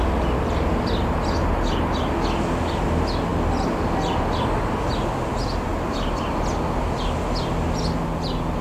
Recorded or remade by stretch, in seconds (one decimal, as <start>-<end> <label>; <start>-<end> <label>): 0.0-8.6 recorded